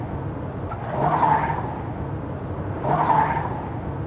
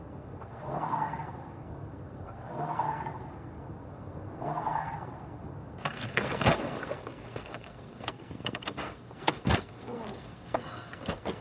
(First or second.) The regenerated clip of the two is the second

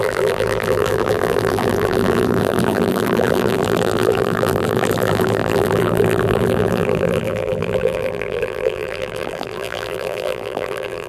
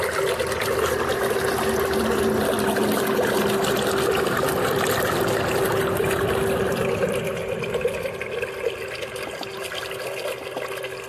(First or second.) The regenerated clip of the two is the first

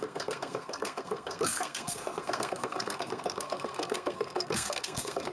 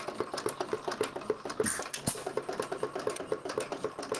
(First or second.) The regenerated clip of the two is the first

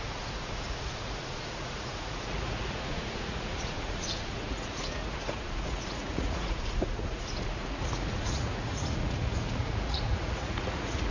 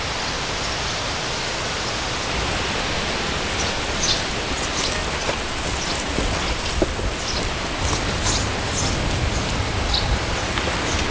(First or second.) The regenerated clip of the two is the first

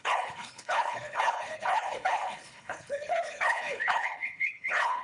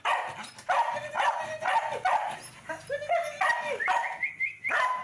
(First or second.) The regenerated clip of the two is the first